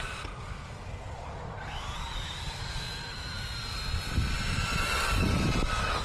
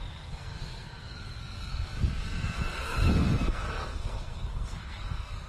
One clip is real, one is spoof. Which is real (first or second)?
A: first